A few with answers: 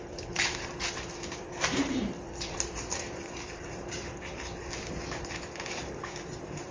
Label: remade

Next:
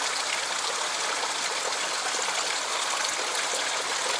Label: recorded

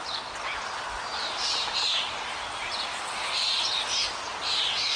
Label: recorded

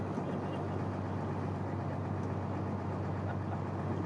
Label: recorded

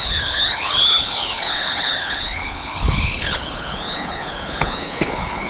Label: remade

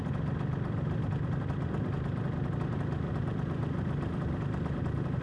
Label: recorded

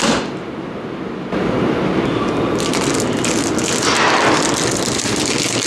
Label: recorded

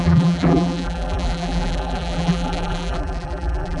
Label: remade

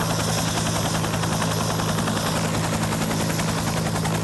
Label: recorded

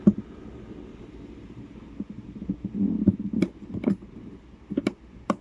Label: remade